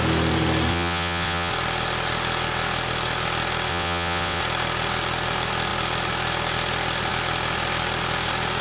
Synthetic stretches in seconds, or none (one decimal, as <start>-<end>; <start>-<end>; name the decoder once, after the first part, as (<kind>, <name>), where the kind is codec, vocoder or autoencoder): 0.7-1.5 (vocoder, WaveNeXt); 3.7-4.4